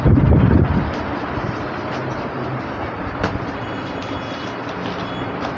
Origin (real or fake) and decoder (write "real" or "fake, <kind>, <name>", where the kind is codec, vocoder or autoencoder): real